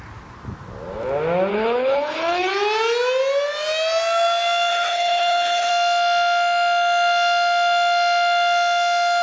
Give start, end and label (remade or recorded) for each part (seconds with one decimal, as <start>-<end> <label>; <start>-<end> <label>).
0.0-1.5 recorded; 1.5-2.5 remade; 2.5-4.7 recorded; 4.7-5.7 remade; 5.7-9.2 recorded